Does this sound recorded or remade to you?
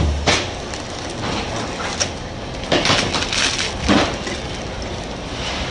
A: recorded